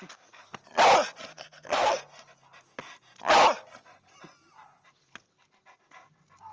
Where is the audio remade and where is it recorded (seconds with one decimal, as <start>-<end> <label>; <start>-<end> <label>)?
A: 0.0-1.3 recorded; 1.3-2.0 remade; 2.0-6.5 recorded